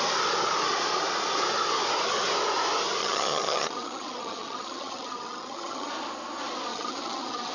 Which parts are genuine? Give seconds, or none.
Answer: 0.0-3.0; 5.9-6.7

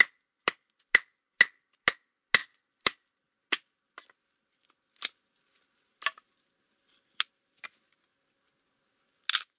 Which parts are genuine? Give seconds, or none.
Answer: 0.0-9.6